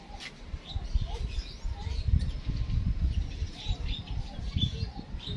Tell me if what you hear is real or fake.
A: real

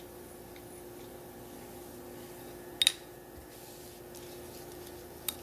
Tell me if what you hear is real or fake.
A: real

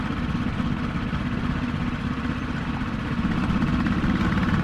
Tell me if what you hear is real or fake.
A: real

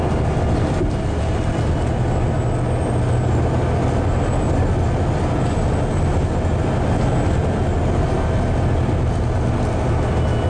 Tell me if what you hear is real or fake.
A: real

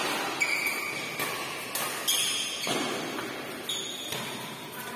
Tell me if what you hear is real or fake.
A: real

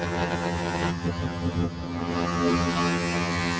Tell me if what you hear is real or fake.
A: fake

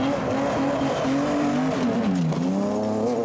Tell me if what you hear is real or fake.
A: real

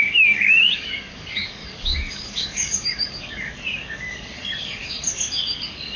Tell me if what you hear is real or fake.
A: fake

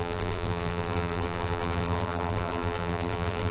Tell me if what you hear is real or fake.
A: fake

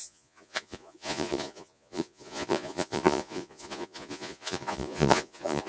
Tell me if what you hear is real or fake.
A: fake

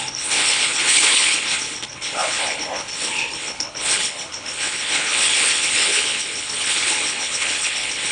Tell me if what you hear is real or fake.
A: fake